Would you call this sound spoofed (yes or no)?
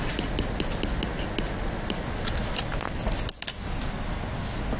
no